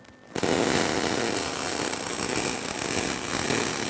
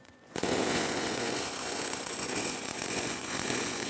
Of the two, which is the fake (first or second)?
second